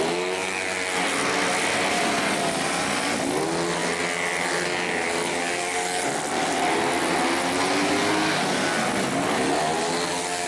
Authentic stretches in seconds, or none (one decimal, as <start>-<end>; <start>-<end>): 0.0-10.5